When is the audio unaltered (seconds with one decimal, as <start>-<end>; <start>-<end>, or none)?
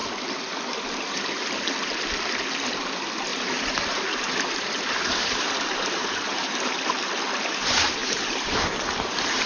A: 0.0-3.3; 6.7-8.0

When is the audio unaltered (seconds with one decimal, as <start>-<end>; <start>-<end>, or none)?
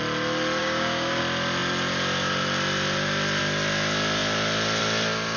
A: 0.0-0.6; 1.2-5.4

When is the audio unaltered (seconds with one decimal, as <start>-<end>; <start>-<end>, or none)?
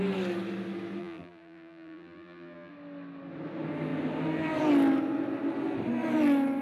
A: 0.0-1.0; 2.7-6.6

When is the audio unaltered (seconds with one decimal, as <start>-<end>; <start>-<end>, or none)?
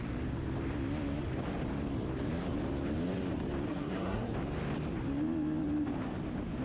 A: 0.0-3.7; 4.3-6.6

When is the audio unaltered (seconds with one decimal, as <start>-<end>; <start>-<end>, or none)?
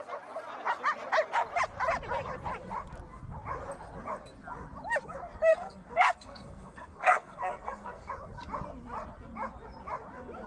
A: 0.0-5.5; 8.1-10.5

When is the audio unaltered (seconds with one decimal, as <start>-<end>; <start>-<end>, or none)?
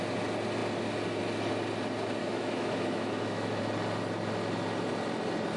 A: 0.0-2.2; 3.6-5.6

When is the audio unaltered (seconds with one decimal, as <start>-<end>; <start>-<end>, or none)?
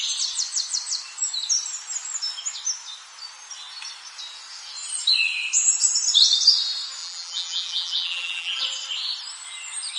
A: 0.0-7.0; 8.6-10.0